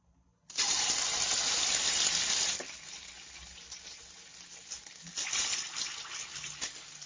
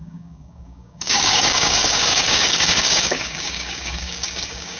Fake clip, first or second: second